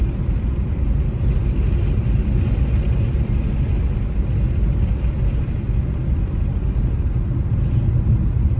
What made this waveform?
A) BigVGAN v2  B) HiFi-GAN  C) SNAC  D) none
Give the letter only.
D